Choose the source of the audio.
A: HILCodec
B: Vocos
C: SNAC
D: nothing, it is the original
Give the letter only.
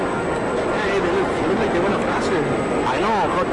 D